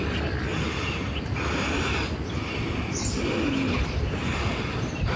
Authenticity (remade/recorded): recorded